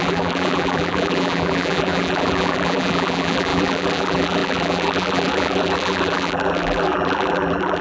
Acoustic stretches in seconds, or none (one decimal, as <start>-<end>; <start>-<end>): none